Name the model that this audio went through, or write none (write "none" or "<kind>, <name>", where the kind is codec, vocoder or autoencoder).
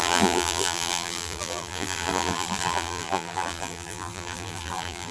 vocoder, BigVGAN v2